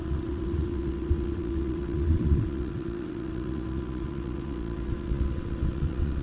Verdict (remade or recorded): remade